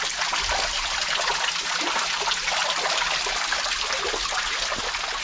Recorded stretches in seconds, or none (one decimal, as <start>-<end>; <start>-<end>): 0.0-5.2

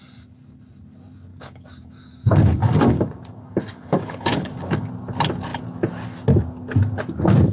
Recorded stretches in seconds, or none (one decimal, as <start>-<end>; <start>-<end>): 0.0-1.3; 4.9-7.5

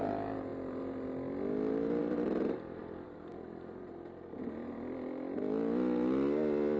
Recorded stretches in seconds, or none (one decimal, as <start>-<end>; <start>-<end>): 0.0-6.8